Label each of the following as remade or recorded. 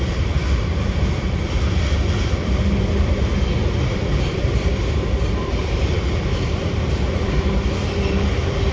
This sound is remade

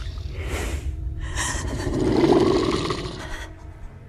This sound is remade